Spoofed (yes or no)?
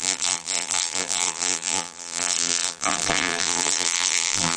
yes